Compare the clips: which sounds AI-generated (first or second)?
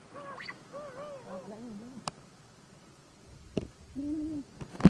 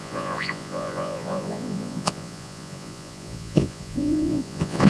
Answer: second